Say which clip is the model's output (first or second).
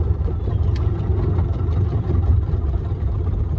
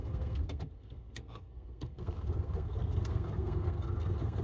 second